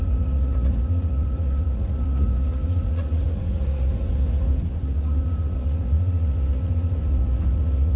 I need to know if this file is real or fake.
fake